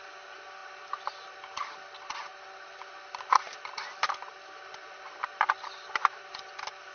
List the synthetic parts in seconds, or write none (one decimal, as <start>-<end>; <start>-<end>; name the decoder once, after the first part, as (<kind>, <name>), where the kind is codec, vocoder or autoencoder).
none